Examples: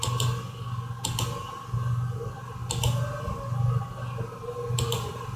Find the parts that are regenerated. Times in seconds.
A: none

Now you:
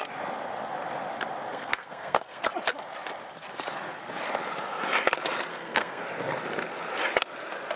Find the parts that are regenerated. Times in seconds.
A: 1.5-2.4 (codec, SNAC); 5.5-6.0

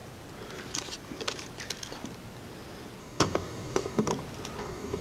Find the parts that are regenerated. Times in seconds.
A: 3.0-4.1 (codec, DAC); 4.6-5.0

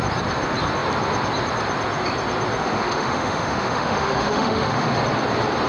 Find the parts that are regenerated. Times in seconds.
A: 2.6-5.0 (autoencoder, DAC-VAE)

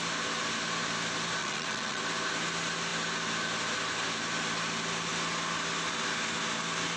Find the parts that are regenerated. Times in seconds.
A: 1.4-2.0 (vocoder, WaveNeXt)

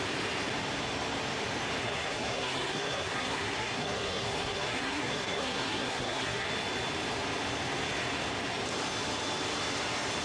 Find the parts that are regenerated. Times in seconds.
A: 1.8-6.5 (codec, SNAC)

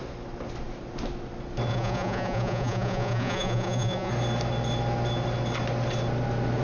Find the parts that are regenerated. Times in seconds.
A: 1.7-4.1 (vocoder, Vocos)

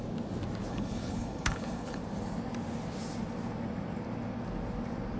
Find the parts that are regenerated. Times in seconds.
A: 0.7-2.0 (codec, HILCodec)